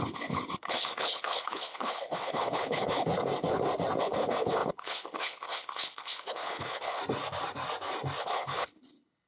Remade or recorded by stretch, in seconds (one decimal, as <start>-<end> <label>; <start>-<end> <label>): 0.0-3.1 remade; 3.1-4.0 recorded; 4.0-7.0 remade; 7.0-8.2 recorded; 8.2-9.3 remade